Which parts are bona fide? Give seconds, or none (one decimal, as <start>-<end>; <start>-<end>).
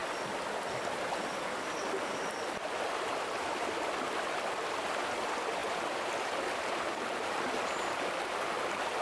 0.0-9.0